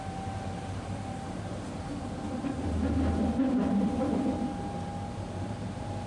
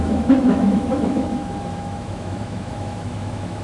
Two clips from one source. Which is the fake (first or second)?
second